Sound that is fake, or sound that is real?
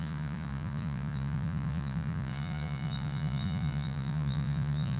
fake